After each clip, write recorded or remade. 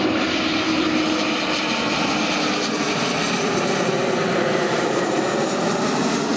recorded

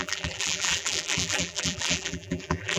remade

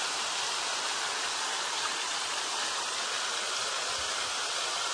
recorded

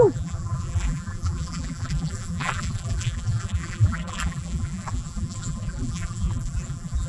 remade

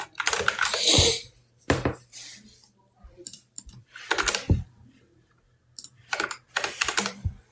remade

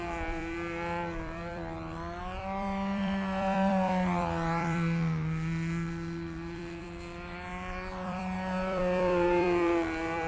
remade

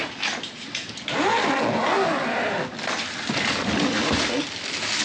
recorded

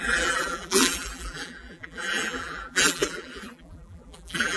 remade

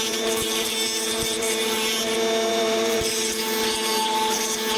remade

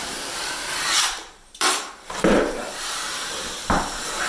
remade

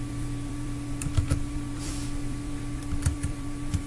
remade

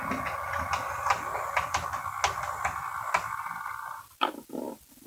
recorded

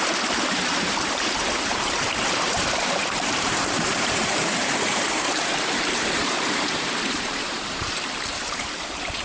remade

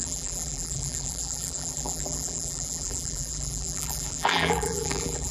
remade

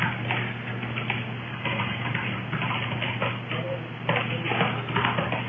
recorded